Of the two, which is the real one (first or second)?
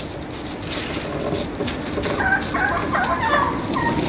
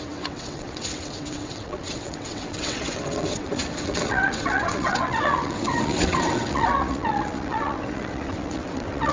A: first